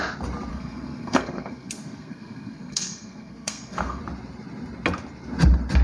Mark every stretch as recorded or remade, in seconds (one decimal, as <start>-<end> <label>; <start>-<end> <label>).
0.0-0.5 recorded; 0.5-4.0 remade; 4.0-5.8 recorded